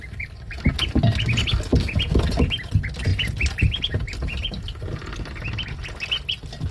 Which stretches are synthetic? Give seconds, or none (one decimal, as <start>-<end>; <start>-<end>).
none